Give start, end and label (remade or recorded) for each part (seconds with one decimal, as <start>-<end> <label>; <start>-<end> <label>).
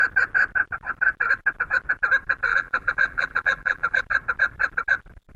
0.0-2.5 recorded; 2.5-4.0 remade; 4.0-5.4 recorded